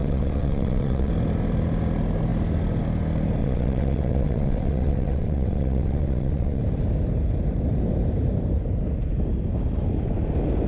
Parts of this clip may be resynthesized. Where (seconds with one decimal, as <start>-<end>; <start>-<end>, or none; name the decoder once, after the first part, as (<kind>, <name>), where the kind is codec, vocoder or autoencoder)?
0.0-1.1 (vocoder, WaveNeXt); 3.4-6.6